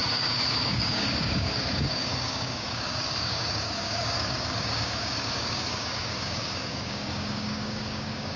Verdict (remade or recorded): remade